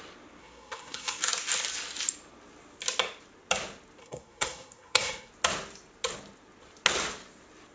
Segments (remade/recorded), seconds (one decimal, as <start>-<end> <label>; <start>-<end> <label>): 0.0-0.4 recorded; 0.4-1.2 remade; 1.2-4.0 recorded; 4.0-5.3 remade; 5.3-7.7 recorded